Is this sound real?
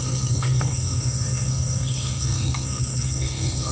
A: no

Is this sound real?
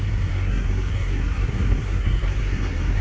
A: no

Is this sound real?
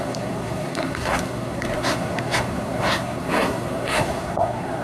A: no